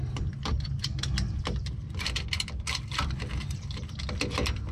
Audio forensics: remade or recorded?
remade